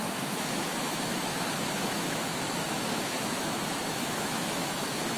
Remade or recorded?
remade